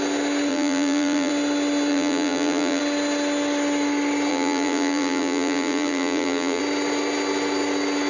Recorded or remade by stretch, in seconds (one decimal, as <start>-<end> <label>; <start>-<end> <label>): 0.0-0.5 recorded; 0.5-1.3 remade; 1.3-1.9 recorded; 1.9-2.8 remade; 2.8-4.3 recorded; 4.3-6.6 remade; 6.6-8.1 recorded